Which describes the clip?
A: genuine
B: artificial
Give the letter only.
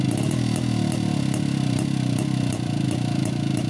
B